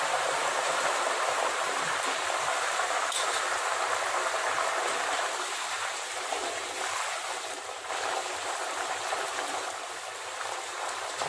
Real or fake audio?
fake